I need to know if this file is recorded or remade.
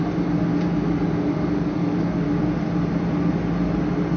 recorded